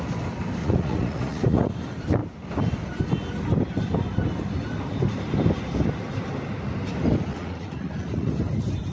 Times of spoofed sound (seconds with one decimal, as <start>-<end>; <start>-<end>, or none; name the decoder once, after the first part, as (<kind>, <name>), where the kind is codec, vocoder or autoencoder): 0.6-1.7 (vocoder, Vocos); 7.3-8.3